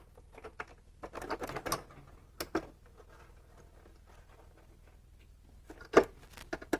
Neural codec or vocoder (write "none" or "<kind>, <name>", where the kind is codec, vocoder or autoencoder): none